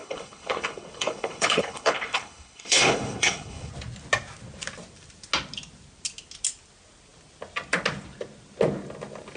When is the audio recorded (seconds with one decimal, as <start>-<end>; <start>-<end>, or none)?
3.7-9.4